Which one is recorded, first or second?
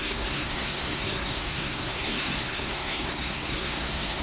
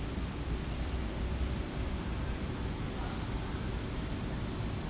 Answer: second